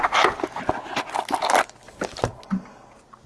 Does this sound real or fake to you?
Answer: real